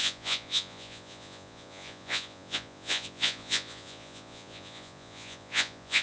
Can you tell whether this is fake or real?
fake